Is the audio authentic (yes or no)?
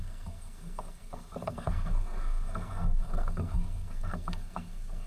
no